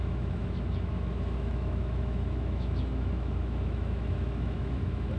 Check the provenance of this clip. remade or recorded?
remade